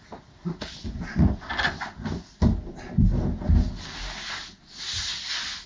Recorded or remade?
recorded